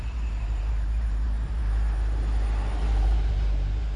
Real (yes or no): no